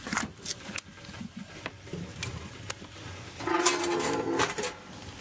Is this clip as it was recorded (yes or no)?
yes